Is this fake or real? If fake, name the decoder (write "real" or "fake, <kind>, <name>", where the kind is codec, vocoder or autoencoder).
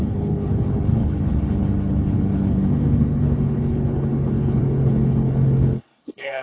fake, codec, HILCodec